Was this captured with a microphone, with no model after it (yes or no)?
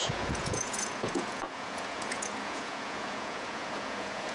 no